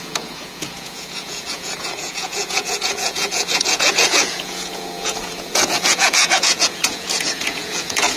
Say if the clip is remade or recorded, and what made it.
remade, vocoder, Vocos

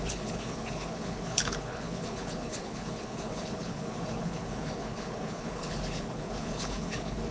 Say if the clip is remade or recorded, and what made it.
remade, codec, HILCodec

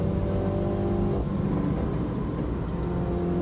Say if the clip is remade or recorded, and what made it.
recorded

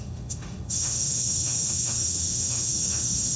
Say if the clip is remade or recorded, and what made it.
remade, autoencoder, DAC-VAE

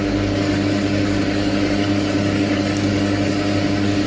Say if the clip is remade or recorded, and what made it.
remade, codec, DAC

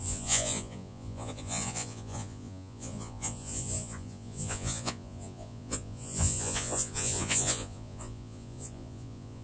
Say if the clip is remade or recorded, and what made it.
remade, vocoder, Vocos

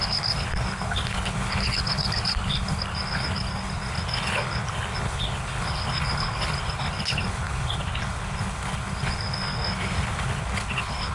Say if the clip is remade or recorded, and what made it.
remade, codec, HILCodec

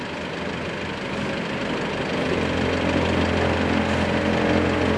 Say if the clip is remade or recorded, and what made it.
recorded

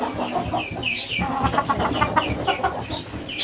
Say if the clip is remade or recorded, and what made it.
recorded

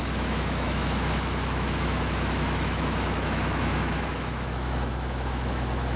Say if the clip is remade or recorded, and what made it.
remade, autoencoder, DAC-VAE